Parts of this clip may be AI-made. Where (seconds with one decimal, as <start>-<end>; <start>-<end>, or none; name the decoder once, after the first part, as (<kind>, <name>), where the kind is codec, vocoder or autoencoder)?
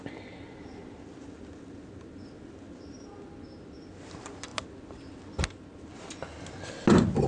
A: none